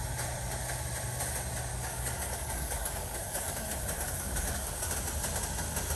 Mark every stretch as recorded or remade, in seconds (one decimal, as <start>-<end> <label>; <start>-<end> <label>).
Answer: 0.0-1.7 recorded; 1.7-4.9 remade; 4.9-6.0 recorded

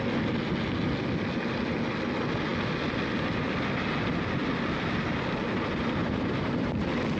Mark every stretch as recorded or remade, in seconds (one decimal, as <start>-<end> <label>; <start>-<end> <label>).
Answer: 0.0-6.0 recorded; 6.0-6.7 remade; 6.7-7.2 recorded

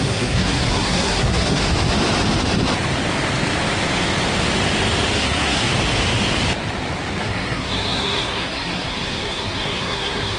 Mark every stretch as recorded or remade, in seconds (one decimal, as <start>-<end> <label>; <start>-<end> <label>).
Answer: 0.0-1.6 remade; 1.6-5.2 recorded; 5.2-5.7 remade; 5.7-7.2 recorded; 7.2-10.4 remade

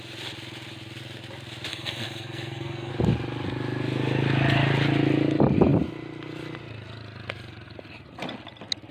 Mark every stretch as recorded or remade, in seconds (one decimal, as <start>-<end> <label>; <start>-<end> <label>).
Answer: 0.0-1.7 recorded; 1.7-2.9 remade; 2.9-8.9 recorded